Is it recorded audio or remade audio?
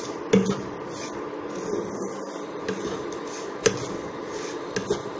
recorded